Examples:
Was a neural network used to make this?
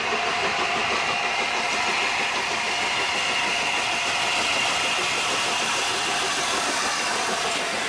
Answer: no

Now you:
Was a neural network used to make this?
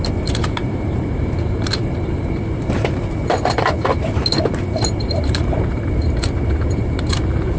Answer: yes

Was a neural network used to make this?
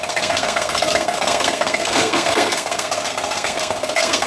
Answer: yes